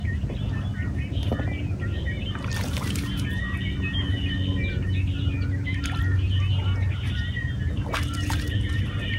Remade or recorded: recorded